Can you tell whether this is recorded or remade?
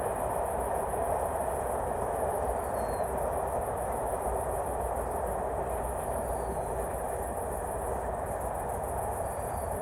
recorded